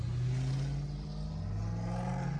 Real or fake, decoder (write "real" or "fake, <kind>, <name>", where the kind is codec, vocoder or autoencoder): real